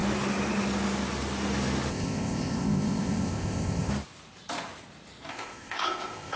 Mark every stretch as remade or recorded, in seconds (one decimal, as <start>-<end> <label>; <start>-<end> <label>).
0.0-1.9 recorded; 1.9-3.9 remade; 3.9-5.3 recorded; 5.3-6.4 remade